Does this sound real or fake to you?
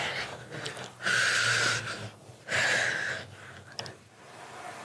real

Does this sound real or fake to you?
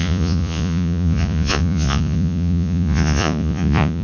fake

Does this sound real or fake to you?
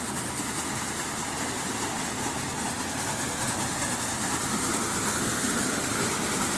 real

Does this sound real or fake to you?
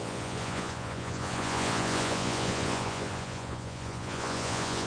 fake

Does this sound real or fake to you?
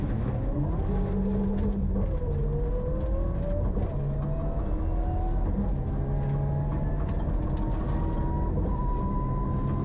real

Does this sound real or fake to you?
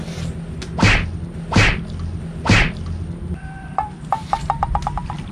real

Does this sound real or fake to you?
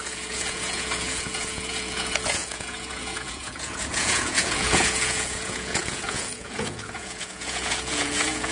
fake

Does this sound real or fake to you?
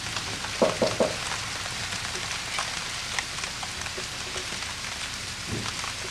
real